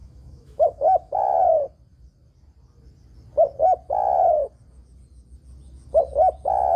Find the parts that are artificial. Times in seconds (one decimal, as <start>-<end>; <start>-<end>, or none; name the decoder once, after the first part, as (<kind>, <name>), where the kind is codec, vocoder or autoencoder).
0.0-1.2 (autoencoder, DAC-VAE)